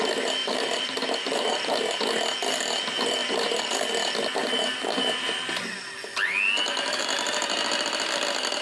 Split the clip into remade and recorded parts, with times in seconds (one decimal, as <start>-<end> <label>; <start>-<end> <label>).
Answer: 0.0-0.4 recorded; 0.4-2.0 remade; 2.0-3.2 recorded; 3.2-3.8 remade; 3.8-4.4 recorded; 4.4-5.6 remade; 5.6-8.6 recorded